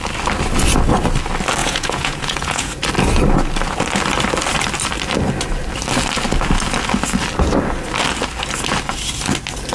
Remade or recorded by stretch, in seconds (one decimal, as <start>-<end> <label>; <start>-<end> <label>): 0.0-1.6 recorded; 1.6-2.7 remade; 2.7-9.7 recorded